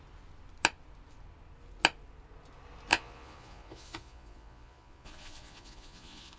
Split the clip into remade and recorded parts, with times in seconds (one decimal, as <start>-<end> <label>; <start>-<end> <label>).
0.0-2.9 recorded; 2.9-6.4 remade